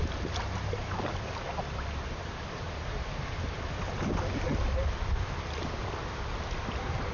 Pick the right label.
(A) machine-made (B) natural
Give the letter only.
B